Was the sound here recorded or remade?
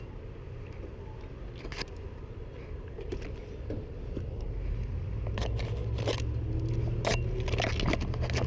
recorded